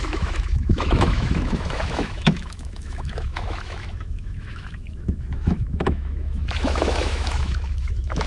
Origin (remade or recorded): remade